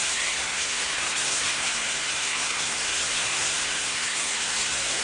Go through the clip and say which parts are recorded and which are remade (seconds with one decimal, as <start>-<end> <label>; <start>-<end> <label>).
0.0-5.0 remade